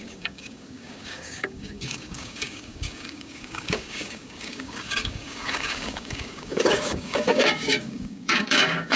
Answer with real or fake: fake